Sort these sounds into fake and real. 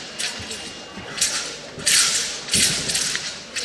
real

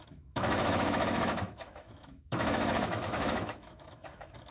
fake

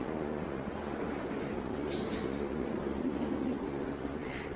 fake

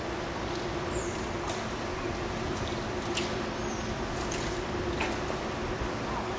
real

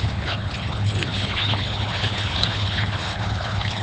fake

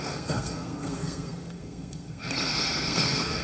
fake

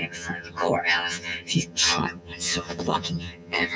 fake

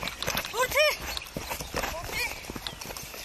real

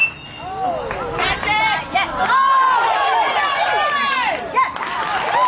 real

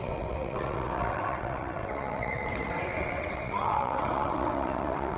fake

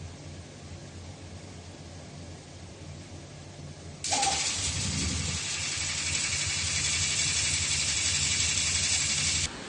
real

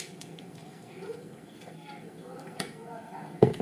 fake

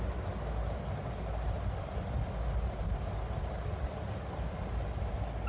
real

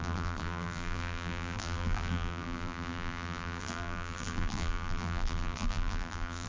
fake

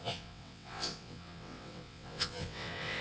fake